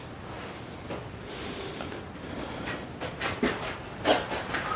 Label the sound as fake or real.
real